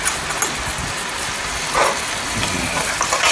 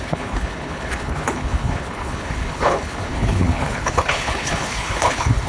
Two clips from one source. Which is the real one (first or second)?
first